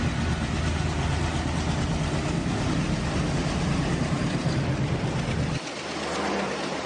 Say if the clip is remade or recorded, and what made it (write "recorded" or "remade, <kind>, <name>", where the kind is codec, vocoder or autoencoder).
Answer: recorded